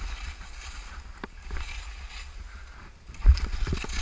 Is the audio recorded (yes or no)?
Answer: yes